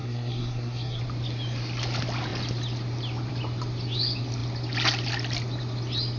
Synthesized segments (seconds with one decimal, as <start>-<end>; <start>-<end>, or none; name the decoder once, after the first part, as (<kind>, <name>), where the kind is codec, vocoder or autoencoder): 0.0-1.0 (codec, SNAC)